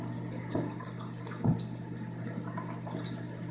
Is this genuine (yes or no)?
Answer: yes